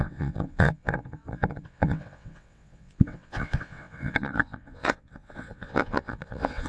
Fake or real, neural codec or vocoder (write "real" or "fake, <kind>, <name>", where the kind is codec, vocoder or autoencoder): fake, vocoder, WaveNeXt